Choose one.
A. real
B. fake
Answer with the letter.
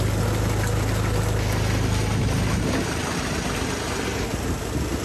A